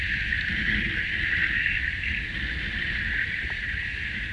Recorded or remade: recorded